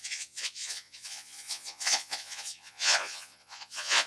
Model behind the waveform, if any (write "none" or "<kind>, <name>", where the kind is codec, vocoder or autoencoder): vocoder, Vocos